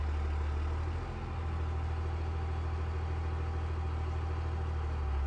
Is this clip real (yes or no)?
yes